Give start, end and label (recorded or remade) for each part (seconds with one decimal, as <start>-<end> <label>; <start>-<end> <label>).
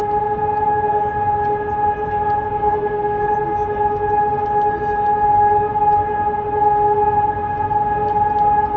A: 0.0-2.6 recorded; 2.6-3.3 remade; 3.3-8.8 recorded